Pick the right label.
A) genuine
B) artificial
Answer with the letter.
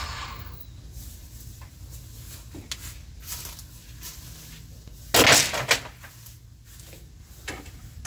A